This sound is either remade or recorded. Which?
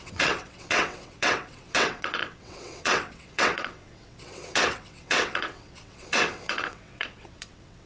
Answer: remade